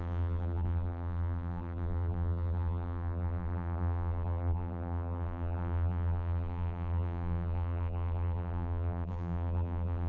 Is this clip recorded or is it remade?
remade